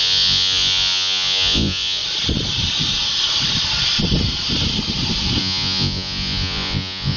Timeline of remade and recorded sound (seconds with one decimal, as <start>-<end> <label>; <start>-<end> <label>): 0.0-2.0 remade; 2.0-5.4 recorded; 5.4-7.2 remade